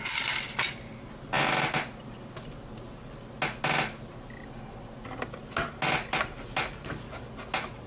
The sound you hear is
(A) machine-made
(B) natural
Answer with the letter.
B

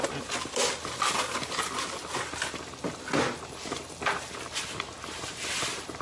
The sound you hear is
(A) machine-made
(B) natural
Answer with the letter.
B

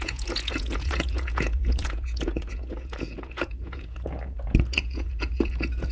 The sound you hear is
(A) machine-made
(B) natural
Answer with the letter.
A